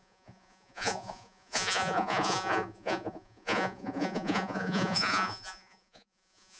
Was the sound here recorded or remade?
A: remade